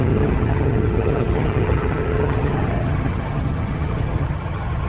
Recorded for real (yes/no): no